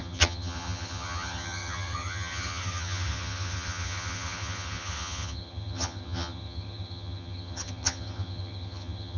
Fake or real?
fake